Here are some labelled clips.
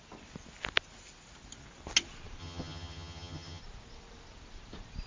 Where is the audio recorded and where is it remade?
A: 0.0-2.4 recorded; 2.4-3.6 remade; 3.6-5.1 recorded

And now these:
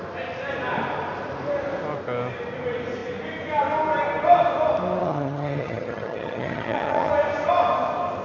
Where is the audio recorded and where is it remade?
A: 0.0-5.0 recorded; 5.0-7.1 remade; 7.1-8.2 recorded

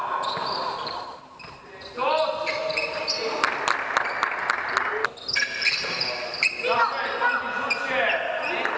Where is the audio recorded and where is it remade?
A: 0.0-8.8 recorded

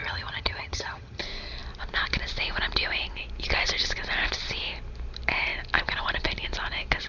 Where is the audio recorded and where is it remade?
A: 0.0-1.2 remade; 1.2-7.1 recorded

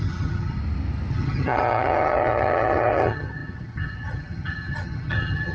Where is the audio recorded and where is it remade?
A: 0.0-0.6 remade; 0.6-1.1 recorded; 1.1-5.5 remade

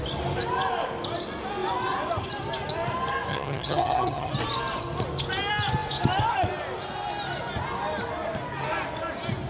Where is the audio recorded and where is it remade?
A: 0.0-3.3 recorded; 3.3-4.3 remade; 4.3-9.5 recorded